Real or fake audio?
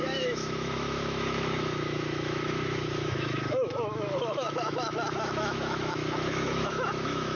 fake